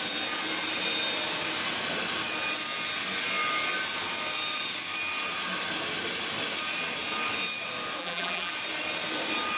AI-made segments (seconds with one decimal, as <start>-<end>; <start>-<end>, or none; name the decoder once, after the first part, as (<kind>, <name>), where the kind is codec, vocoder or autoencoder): 8.0-8.5 (vocoder, BigVGAN v2)